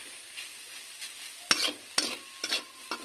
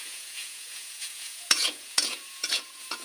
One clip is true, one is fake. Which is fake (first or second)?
second